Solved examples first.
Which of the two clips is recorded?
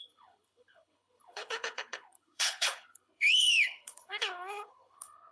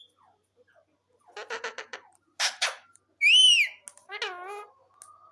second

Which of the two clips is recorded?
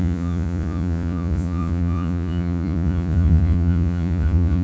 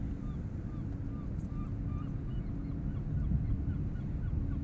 second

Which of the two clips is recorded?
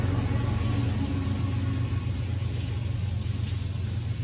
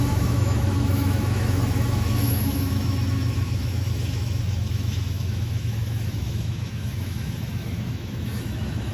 first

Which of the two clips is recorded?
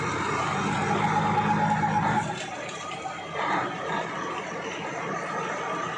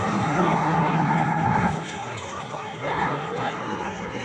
first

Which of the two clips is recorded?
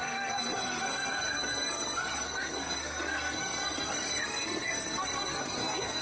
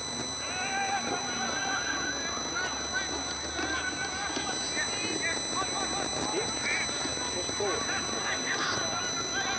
second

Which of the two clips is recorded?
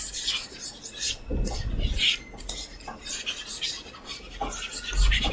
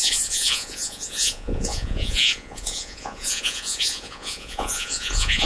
first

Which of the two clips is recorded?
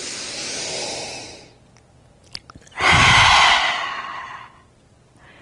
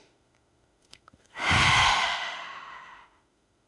first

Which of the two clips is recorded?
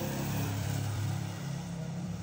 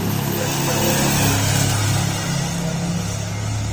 second